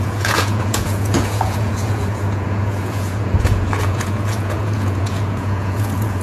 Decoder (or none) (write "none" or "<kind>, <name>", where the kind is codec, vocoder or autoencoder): vocoder, Vocos